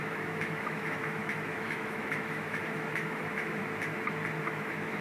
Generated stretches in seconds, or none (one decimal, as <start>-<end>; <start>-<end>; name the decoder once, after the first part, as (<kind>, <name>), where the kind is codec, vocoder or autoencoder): 0.0-3.6 (autoencoder, DAC-VAE); 4.4-5.0